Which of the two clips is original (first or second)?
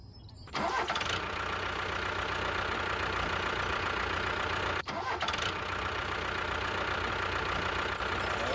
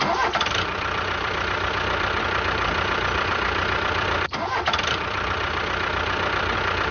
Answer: first